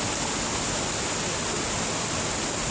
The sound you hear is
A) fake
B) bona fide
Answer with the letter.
B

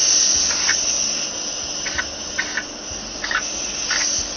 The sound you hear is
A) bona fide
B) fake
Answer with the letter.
A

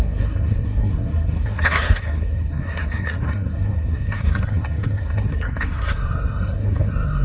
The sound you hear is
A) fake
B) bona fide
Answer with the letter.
A